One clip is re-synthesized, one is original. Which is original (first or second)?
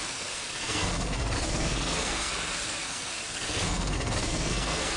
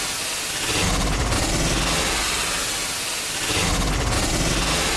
second